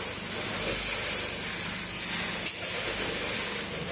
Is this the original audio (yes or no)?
yes